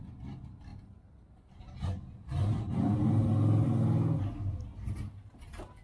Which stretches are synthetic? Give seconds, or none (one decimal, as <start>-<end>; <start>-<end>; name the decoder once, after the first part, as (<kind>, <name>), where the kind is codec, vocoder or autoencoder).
none